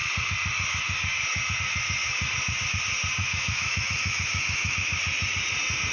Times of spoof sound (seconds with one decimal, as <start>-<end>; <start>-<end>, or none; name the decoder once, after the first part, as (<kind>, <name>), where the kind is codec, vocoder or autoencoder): 3.2-5.0 (autoencoder, DAC-VAE)